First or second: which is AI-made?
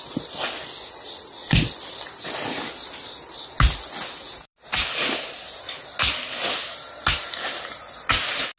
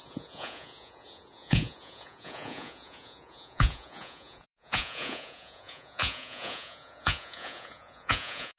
second